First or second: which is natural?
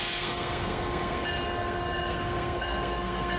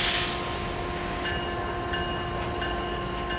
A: second